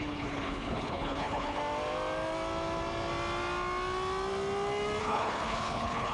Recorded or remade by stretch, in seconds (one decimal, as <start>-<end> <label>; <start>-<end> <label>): 0.0-1.6 remade; 1.6-5.0 recorded; 5.0-6.1 remade

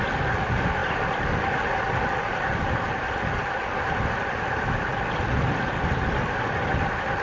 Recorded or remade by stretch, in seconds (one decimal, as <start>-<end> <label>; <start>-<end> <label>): 0.0-7.2 recorded

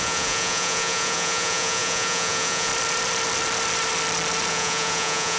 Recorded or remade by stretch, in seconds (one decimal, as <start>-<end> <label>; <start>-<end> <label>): 0.0-2.7 remade; 2.7-4.5 recorded; 4.5-5.4 remade

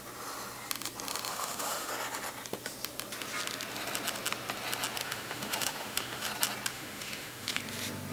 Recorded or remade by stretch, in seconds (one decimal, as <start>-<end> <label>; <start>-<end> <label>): 0.0-1.3 recorded; 1.3-1.9 remade; 1.9-5.0 recorded; 5.0-6.3 remade; 6.3-6.7 recorded; 6.7-7.6 remade; 7.6-8.1 recorded

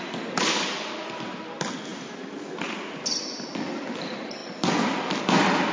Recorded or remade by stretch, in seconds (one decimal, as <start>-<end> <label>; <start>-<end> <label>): 0.0-5.7 recorded

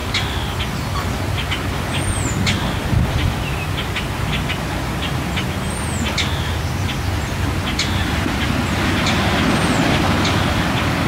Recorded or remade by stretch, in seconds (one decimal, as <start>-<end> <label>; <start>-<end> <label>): 0.0-11.1 recorded

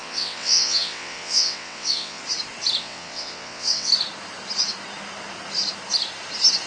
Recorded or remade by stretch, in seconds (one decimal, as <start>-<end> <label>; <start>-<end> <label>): 0.0-2.2 remade; 2.2-2.8 recorded; 2.8-3.9 remade; 3.9-6.7 recorded

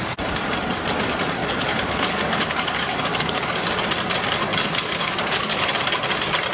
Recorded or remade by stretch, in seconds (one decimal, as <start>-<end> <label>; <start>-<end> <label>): 0.0-1.4 recorded; 1.4-3.7 remade; 3.7-4.5 recorded; 4.5-5.7 remade; 5.7-6.5 recorded